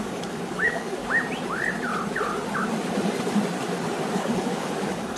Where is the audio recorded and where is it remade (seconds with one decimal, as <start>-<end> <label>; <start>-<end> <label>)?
0.0-1.0 remade; 1.0-4.1 recorded; 4.1-5.2 remade